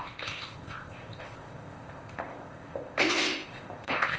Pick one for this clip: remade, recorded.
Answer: remade